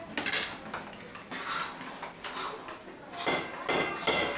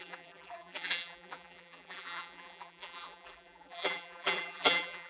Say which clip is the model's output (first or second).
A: second